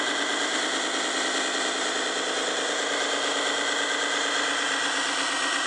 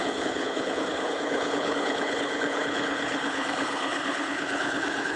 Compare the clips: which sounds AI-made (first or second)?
second